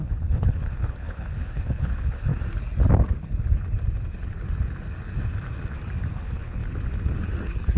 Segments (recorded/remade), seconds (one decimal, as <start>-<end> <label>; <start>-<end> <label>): 0.0-2.3 remade; 2.3-6.1 recorded; 6.1-6.6 remade; 6.6-7.8 recorded